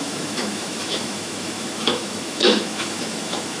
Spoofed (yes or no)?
yes